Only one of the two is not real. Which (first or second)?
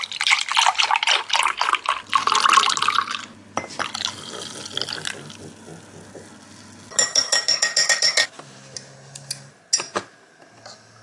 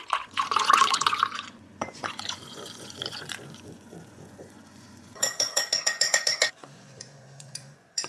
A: second